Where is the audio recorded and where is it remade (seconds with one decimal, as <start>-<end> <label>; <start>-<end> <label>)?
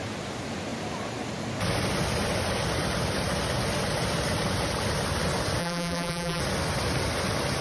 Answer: 0.0-5.6 recorded; 5.6-6.4 remade; 6.4-7.6 recorded